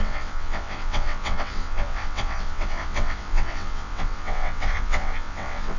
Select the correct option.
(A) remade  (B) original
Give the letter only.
A